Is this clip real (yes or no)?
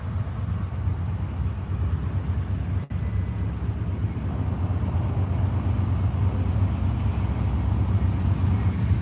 yes